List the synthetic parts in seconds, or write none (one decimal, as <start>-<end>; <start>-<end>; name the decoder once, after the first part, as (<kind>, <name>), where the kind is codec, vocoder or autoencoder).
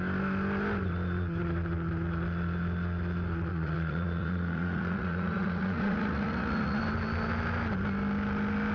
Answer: 3.5-6.8 (vocoder, Vocos)